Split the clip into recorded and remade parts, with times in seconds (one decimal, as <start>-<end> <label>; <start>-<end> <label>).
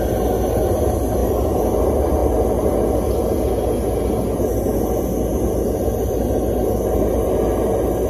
0.0-8.1 recorded